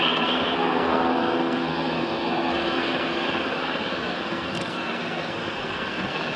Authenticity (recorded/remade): remade